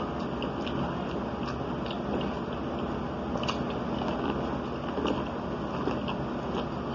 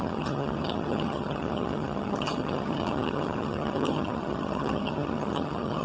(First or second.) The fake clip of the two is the second